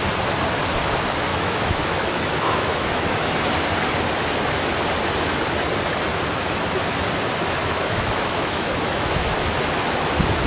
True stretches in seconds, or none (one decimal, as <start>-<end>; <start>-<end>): 0.0-1.3; 3.4-7.6; 9.5-10.5